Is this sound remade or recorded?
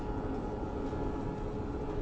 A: recorded